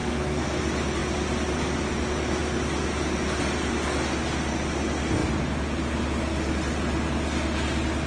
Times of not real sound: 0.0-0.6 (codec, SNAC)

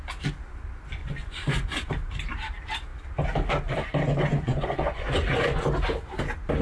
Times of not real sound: 1.0-1.9 (vocoder, Vocos); 4.3-5.6

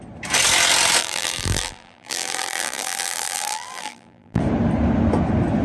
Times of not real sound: 1.0-4.4 (vocoder, BigVGAN v2)

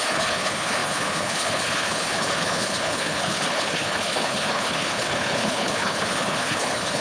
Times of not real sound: 0.0-7.0 (codec, HILCodec)